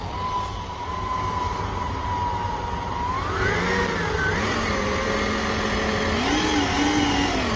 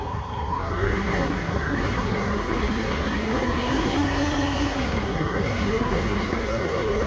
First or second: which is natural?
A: first